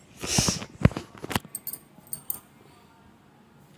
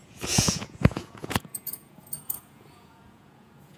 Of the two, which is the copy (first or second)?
second